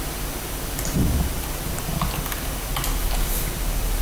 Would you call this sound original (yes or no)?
yes